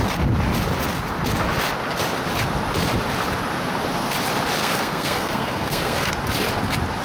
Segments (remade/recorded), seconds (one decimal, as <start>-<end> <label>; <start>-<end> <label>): 0.0-4.6 recorded; 4.6-6.1 remade; 6.1-7.0 recorded